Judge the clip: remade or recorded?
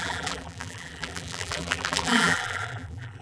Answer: remade